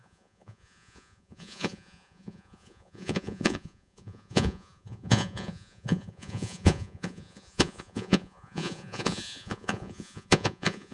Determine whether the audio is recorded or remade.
remade